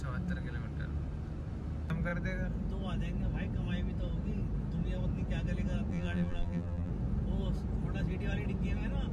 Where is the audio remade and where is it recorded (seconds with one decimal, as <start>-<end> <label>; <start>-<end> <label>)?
0.0-5.9 recorded; 5.9-6.9 remade; 6.9-9.1 recorded